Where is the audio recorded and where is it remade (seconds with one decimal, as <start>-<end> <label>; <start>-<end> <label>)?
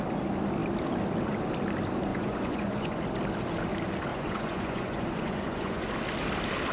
0.0-2.1 recorded; 2.1-3.0 remade; 3.0-4.1 recorded; 4.1-5.8 remade; 5.8-6.7 recorded